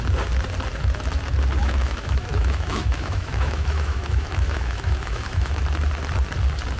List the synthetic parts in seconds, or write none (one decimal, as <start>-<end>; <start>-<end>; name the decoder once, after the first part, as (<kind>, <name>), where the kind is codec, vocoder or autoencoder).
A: 1.6-5.6 (autoencoder, DAC-VAE)